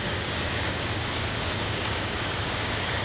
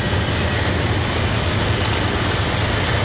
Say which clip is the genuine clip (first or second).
second